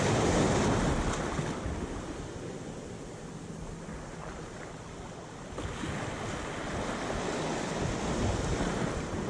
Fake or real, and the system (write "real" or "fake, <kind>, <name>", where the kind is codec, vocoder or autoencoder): real